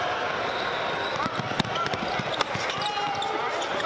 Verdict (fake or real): real